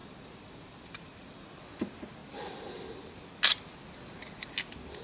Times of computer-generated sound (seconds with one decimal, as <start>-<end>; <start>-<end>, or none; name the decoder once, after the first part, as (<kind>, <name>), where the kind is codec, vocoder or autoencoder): 0.0-1.6 (vocoder, BigVGAN v2)